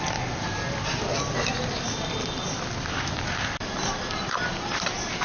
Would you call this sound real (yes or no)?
yes